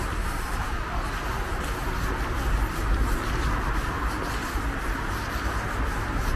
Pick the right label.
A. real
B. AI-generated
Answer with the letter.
A